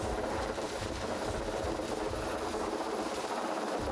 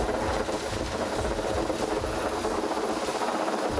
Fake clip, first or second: first